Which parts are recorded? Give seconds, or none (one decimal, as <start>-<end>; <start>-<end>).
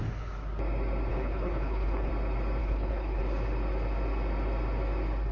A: 0.0-1.1; 2.1-2.6; 3.2-5.3